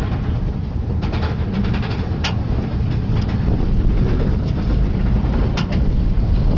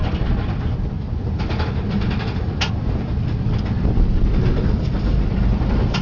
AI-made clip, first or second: first